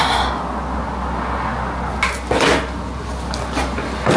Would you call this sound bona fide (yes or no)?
yes